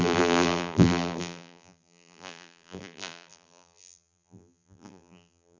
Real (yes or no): no